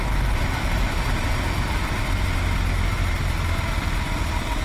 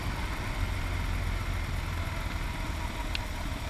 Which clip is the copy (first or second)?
first